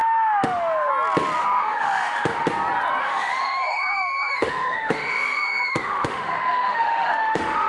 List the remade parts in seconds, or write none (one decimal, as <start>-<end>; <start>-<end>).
0.0-0.9; 1.4-2.5; 3.0-7.7